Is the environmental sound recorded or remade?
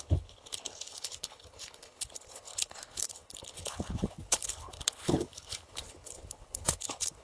remade